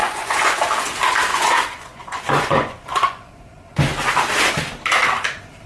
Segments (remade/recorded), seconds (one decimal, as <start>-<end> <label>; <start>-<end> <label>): 0.0-0.6 remade; 0.6-1.3 recorded; 1.3-3.3 remade; 3.3-5.7 recorded